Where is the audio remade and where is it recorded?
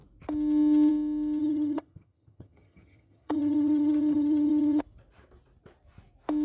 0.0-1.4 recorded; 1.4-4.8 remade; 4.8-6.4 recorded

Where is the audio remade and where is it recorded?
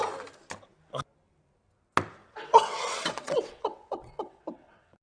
0.0-2.2 recorded; 2.2-5.0 remade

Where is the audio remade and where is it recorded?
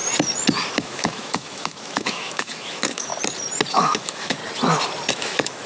0.0-0.8 recorded; 0.8-3.1 remade; 3.1-3.7 recorded; 3.7-4.4 remade; 4.4-5.1 recorded; 5.1-5.7 remade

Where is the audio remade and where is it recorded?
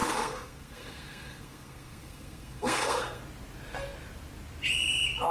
0.0-3.2 remade; 3.2-5.3 recorded